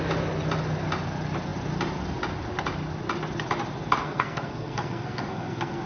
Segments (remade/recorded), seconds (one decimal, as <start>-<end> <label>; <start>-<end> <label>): 0.0-4.0 recorded; 4.0-5.9 remade